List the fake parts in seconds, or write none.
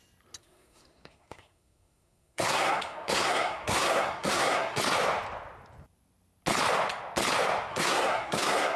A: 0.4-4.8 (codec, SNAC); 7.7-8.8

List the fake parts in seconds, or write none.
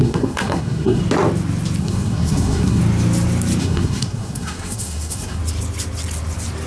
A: 0.0-1.0 (codec, SNAC); 1.8-2.8; 3.6-5.4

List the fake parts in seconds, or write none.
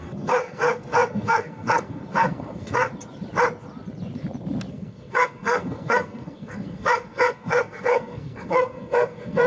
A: 0.0-2.9 (codec, SNAC); 4.7-9.5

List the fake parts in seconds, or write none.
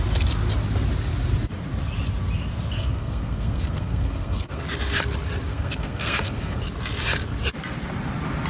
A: 2.8-4.6 (codec, SNAC); 5.5-6.6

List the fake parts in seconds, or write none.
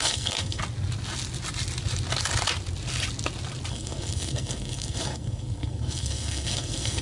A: 0.0-0.6 (codec, SNAC); 3.7-7.0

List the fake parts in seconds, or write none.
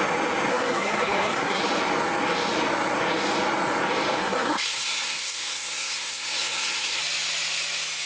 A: 0.5-1.6 (codec, SNAC); 4.2-7.0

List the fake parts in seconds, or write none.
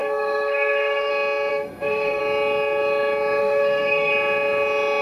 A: 0.0-1.1 (codec, SNAC); 1.5-2.2; 3.4-4.1